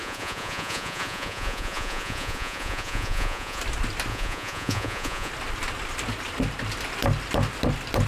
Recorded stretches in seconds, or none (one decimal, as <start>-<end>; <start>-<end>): 3.6-4.1; 5.3-8.1